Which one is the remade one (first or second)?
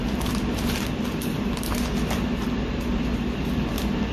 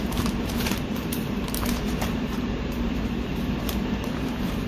second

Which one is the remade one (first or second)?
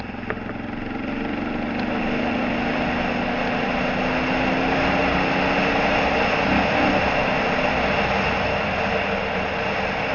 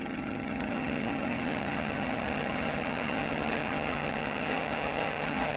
second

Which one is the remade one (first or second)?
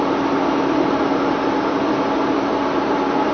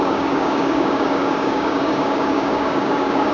second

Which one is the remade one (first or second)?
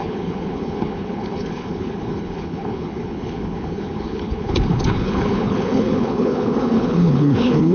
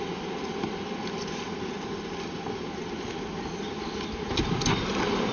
first